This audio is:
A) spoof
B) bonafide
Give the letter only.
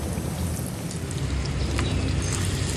B